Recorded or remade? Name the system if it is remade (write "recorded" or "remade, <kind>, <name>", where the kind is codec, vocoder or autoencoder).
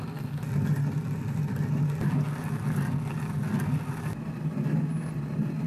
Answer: recorded